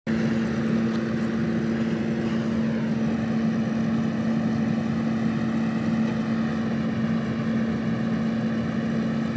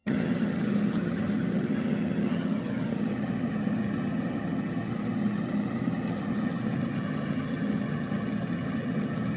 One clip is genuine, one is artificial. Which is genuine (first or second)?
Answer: first